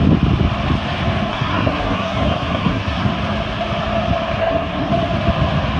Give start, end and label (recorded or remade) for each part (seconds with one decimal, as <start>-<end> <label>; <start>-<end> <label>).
0.0-1.3 recorded; 1.3-3.1 remade; 3.1-4.4 recorded; 4.4-4.9 remade; 4.9-5.8 recorded